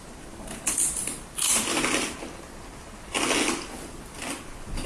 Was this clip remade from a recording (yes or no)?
no